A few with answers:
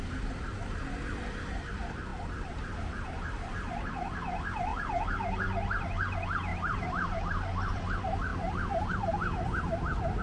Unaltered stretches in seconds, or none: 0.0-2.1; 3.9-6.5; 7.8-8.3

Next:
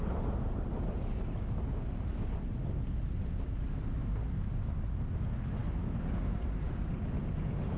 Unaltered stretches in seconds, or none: 0.0-7.8

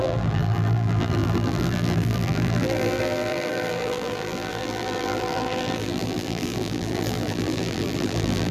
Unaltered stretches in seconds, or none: none

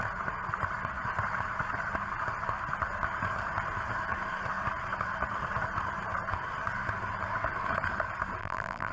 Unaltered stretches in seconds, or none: 0.0-8.4

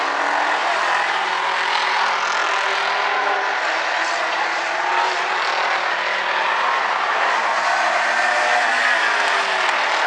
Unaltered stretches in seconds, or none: 0.0-0.6; 1.3-10.1

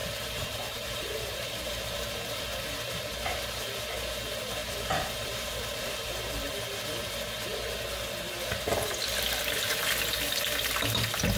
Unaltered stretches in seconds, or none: 2.4-11.4

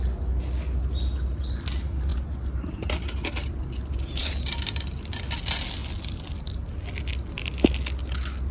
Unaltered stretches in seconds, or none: 0.0-2.1; 4.8-8.5